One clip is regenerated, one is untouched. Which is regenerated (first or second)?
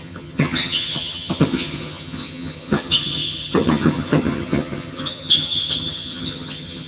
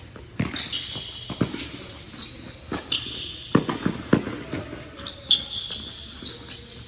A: first